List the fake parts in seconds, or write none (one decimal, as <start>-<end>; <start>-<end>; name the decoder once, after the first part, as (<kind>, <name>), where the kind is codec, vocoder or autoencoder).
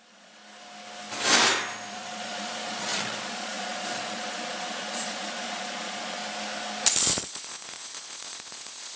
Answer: 0.0-0.4 (vocoder, Vocos); 1.9-6.2; 7.0-9.0